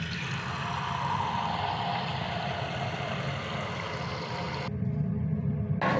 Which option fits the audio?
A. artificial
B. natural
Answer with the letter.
B